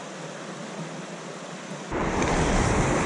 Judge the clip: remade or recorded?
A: recorded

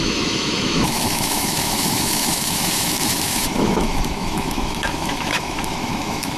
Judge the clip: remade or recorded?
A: remade